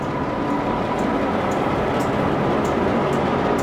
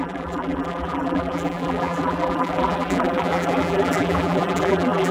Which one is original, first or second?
first